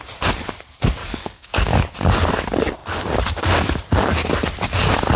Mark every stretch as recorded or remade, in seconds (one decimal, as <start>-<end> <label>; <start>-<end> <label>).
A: 0.0-1.0 recorded; 1.0-1.8 remade; 1.8-5.2 recorded